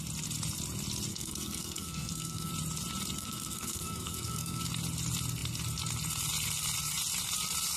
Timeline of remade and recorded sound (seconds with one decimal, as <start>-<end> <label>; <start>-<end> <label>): 0.0-1.1 recorded; 1.1-2.5 remade; 2.5-3.2 recorded; 3.2-4.6 remade; 4.6-7.8 recorded